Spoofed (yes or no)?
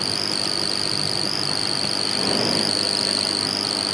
no